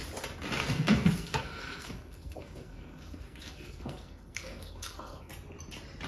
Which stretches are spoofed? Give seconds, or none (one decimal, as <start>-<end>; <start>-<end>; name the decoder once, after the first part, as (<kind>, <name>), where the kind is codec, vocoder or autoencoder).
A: 0.6-5.3 (codec, SNAC)